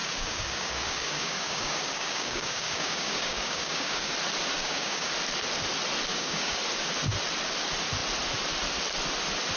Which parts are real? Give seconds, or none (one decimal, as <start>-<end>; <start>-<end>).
4.1-4.6; 5.1-6.1; 6.6-9.6